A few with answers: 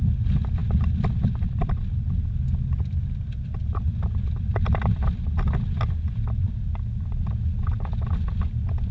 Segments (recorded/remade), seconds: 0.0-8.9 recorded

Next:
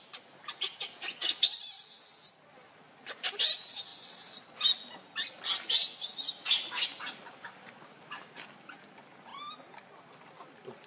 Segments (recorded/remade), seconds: 0.0-10.9 recorded

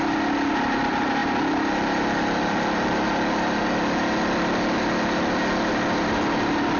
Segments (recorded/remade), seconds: 0.0-6.8 recorded

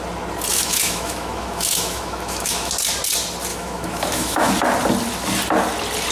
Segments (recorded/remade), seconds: 0.0-0.5 recorded; 0.5-2.7 remade; 2.7-3.5 recorded; 3.5-4.5 remade; 4.5-6.1 recorded

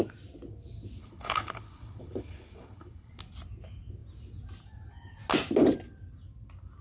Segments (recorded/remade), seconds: 0.0-1.0 recorded; 1.0-3.2 remade; 3.2-6.8 recorded

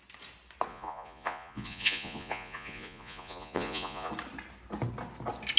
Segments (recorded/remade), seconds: 0.0-0.7 recorded; 0.7-4.1 remade; 4.1-5.6 recorded

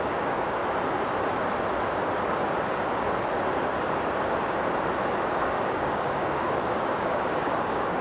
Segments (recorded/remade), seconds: 0.0-0.6 remade; 0.6-5.4 recorded; 5.4-8.0 remade

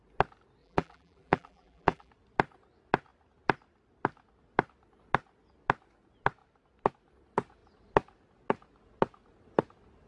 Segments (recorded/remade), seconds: 0.0-0.6 recorded; 0.6-2.1 remade; 2.1-10.1 recorded